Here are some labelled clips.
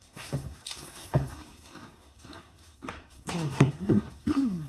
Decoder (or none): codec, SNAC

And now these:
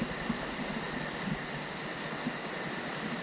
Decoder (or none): none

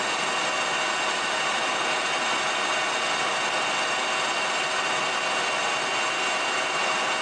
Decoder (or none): none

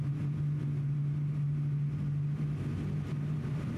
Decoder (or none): none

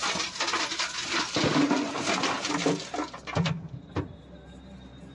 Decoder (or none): none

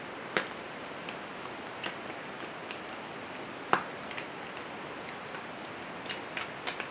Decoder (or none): none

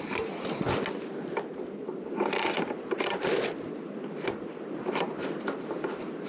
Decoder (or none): none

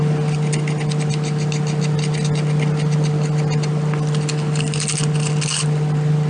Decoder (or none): none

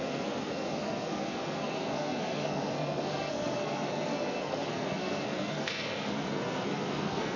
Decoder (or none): codec, SNAC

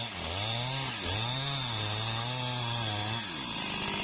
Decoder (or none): none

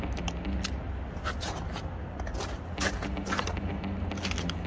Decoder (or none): none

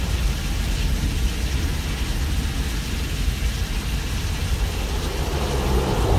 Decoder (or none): none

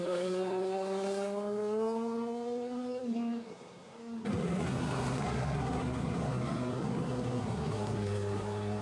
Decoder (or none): codec, SNAC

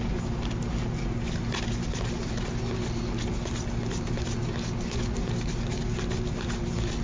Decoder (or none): none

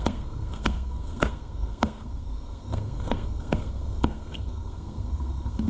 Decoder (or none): codec, SNAC